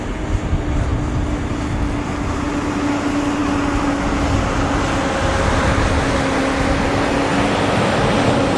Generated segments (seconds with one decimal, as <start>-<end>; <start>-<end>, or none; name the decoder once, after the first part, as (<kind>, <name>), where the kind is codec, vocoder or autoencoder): none